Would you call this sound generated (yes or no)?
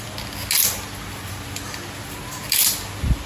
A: no